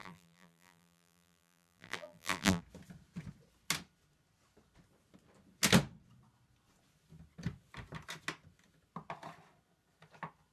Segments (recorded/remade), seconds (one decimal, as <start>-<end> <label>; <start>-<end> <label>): 0.0-2.6 remade; 2.6-10.5 recorded